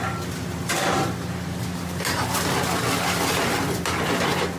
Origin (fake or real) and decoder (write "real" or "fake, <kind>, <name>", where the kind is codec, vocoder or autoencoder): real